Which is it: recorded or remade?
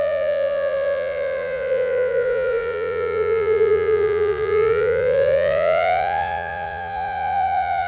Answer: remade